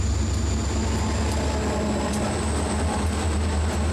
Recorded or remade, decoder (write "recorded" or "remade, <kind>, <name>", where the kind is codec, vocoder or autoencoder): recorded